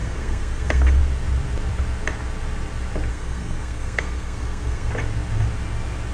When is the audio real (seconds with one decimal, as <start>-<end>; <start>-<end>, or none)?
1.0-3.1; 4.9-6.1